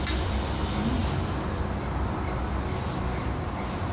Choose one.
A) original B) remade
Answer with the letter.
A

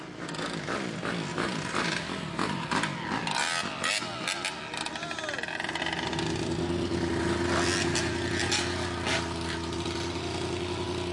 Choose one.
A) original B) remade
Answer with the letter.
A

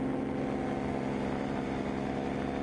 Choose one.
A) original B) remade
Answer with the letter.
A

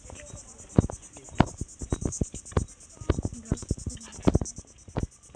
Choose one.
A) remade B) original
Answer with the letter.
B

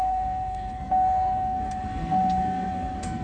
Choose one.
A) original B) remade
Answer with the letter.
B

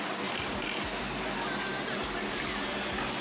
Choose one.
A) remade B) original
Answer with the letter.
B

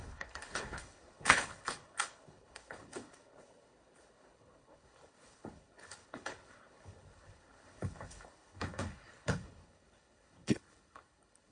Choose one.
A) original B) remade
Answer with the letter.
B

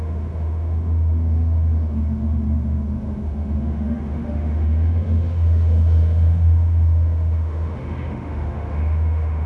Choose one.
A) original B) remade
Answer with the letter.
B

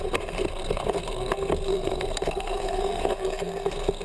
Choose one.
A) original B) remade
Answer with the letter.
B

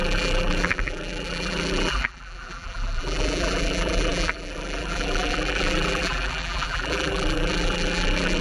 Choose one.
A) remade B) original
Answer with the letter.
A